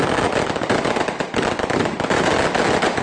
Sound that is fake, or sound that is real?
real